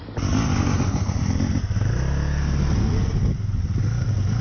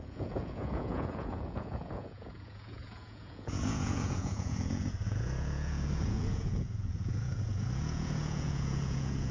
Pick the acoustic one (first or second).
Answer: first